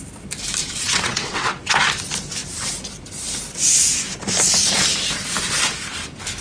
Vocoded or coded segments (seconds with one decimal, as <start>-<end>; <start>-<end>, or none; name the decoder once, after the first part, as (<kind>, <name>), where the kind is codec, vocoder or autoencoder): 0.6-1.7 (vocoder, WaveNeXt)